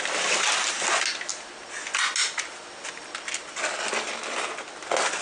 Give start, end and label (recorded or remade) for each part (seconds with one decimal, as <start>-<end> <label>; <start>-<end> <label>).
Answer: 0.0-5.2 recorded